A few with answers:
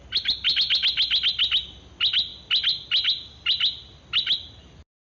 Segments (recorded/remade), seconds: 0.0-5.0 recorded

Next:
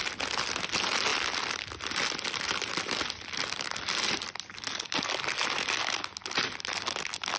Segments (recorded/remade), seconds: 0.0-7.4 recorded

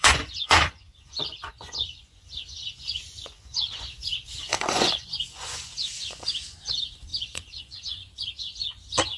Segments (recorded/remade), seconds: 0.0-9.2 remade

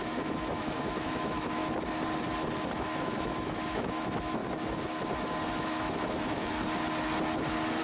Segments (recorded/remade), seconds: 0.0-1.6 remade; 1.6-2.8 recorded; 2.8-4.4 remade; 4.4-5.5 recorded; 5.5-6.5 remade; 6.5-7.8 recorded

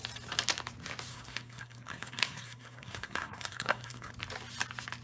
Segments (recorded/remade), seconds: 0.0-1.1 recorded; 1.1-4.1 remade; 4.1-5.0 recorded

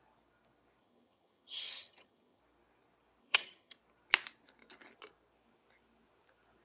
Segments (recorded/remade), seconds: 0.0-0.8 recorded; 0.8-2.4 remade; 2.4-3.2 recorded; 3.2-3.8 remade; 3.8-6.6 recorded

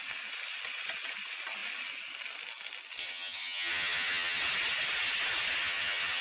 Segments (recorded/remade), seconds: 0.0-3.0 recorded; 3.0-4.4 remade; 4.4-5.6 recorded; 5.6-6.2 remade

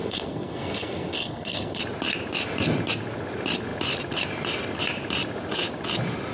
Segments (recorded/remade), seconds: 0.0-1.8 remade; 1.8-6.3 recorded